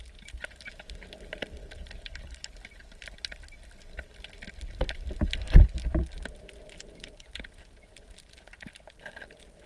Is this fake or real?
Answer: fake